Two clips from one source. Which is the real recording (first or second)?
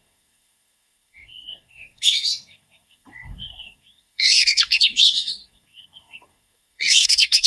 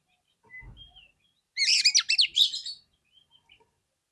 second